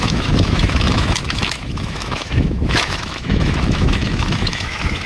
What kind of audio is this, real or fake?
fake